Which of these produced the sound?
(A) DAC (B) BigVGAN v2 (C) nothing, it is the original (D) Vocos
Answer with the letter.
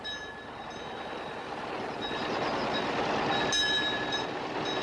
C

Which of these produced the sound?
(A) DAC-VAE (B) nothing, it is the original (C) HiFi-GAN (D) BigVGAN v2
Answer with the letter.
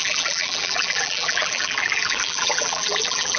D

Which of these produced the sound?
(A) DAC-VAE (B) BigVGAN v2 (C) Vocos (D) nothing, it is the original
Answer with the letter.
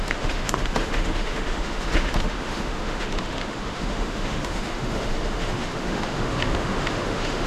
A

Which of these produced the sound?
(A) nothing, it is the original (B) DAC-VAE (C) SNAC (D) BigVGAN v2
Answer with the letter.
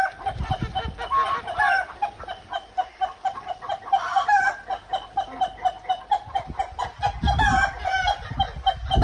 A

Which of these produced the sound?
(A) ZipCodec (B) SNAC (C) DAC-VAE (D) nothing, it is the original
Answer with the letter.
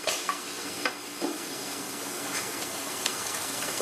B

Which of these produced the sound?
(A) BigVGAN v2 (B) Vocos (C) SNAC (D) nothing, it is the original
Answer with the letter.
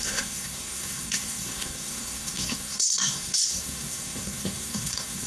C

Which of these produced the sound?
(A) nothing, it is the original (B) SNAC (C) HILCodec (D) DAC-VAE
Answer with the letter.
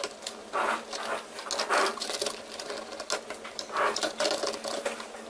A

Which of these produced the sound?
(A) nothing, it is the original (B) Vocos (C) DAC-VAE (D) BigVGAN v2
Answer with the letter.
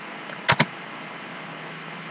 A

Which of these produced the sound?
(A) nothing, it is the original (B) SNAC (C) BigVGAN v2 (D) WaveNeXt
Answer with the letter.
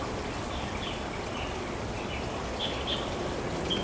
A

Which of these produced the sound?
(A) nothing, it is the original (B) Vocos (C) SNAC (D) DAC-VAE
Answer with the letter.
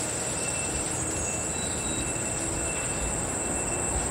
A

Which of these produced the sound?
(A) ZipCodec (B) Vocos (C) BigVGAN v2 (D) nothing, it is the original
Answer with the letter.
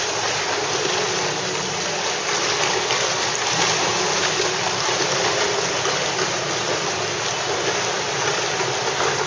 D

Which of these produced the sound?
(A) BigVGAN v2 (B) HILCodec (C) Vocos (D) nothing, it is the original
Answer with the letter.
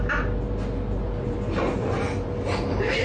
D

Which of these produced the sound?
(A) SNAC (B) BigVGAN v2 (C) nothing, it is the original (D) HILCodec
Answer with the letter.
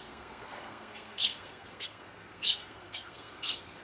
A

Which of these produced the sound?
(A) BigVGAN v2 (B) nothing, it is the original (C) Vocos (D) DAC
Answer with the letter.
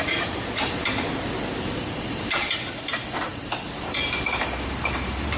A